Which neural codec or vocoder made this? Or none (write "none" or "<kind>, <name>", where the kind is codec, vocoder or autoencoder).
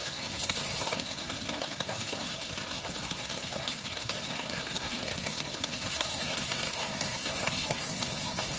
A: codec, SNAC